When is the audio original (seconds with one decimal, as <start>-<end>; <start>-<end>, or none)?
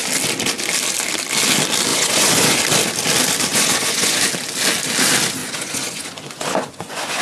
0.0-1.9; 2.6-3.5; 4.2-5.4